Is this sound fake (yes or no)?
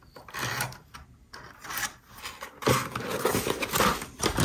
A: no